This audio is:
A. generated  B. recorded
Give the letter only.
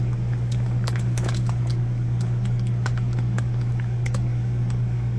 A